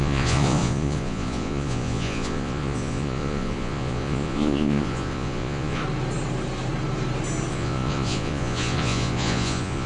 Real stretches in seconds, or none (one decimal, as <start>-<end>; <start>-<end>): 5.8-7.5